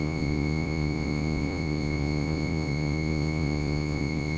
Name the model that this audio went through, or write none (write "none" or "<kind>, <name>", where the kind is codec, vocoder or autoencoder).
vocoder, Vocos